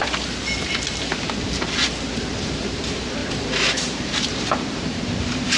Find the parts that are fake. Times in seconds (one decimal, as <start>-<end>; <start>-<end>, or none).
2.1-5.6